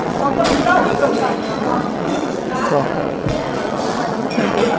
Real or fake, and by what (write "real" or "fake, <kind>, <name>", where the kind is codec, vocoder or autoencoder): fake, vocoder, WaveNeXt